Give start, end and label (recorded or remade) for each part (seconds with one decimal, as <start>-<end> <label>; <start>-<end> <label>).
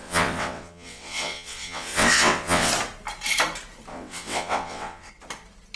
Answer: 0.0-2.7 remade; 2.7-3.9 recorded; 3.9-5.1 remade; 5.1-5.8 recorded